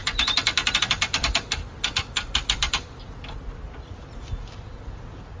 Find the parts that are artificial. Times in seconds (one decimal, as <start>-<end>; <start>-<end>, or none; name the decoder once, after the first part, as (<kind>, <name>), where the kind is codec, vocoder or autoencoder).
none